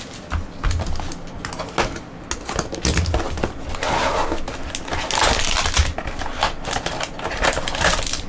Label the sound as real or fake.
real